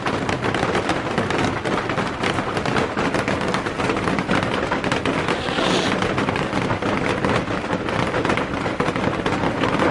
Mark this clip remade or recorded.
recorded